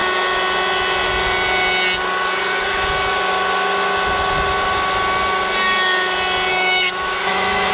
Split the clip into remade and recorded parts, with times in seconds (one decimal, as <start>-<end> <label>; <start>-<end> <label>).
0.0-6.5 recorded; 6.5-7.7 remade